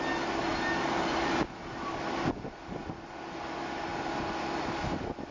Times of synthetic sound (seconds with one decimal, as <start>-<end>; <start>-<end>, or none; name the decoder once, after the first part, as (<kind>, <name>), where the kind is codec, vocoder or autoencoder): none